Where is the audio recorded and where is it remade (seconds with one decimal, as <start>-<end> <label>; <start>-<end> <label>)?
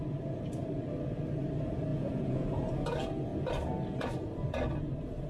0.0-1.9 recorded; 1.9-2.6 remade; 2.6-5.3 recorded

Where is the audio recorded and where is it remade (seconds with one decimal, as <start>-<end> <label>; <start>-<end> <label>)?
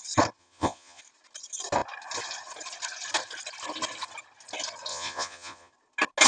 0.0-0.4 recorded; 0.4-1.0 remade; 1.0-4.9 recorded; 4.9-5.7 remade; 5.7-6.3 recorded